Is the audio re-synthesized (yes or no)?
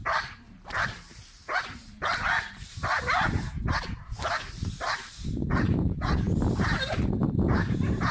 yes